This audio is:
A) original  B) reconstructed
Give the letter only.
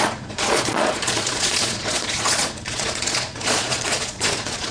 B